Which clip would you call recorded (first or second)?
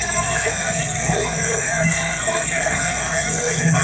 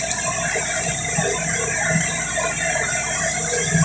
second